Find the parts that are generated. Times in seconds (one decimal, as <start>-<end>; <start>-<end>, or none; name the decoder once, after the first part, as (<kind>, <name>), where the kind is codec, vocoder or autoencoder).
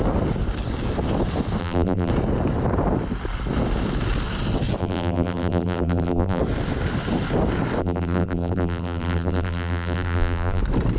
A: 1.6-2.1 (vocoder, BigVGAN v2); 4.8-6.4; 7.8-10.6